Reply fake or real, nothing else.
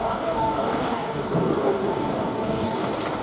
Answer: fake